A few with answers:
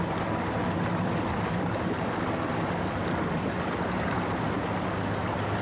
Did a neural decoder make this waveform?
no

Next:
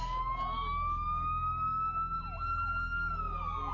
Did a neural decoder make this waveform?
no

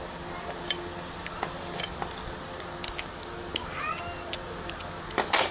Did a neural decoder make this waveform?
no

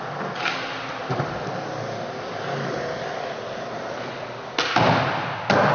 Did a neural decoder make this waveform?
no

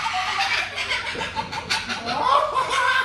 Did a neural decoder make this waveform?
no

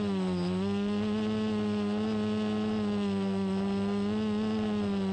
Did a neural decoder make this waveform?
no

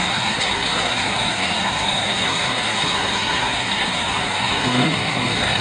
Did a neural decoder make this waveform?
yes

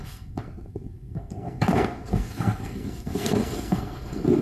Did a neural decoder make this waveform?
yes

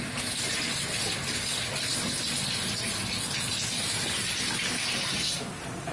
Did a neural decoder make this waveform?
no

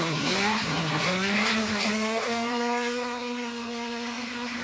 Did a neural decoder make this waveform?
yes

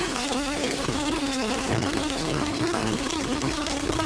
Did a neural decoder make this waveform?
yes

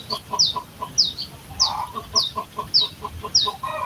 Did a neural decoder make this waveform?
no